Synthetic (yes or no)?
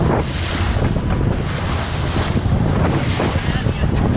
no